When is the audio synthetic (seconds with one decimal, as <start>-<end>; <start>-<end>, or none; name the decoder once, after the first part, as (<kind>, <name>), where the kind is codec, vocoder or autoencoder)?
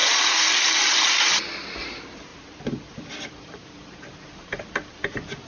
none